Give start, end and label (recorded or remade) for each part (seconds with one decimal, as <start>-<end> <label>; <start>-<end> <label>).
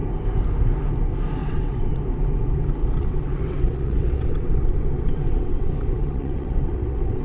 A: 0.0-1.4 recorded; 1.4-2.0 remade; 2.0-2.8 recorded; 2.8-7.2 remade